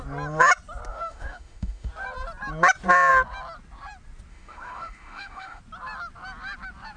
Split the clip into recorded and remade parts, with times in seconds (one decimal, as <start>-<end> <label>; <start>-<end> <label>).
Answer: 0.0-0.9 recorded; 0.9-1.9 remade; 1.9-4.3 recorded; 4.3-5.6 remade; 5.6-7.0 recorded